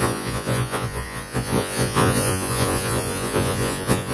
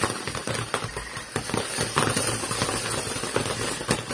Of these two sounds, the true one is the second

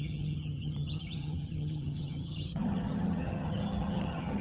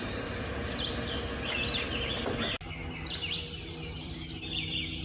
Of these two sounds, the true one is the second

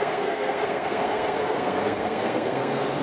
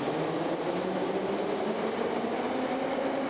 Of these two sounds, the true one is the second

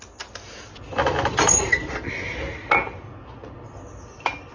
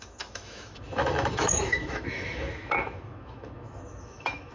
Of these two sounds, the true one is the first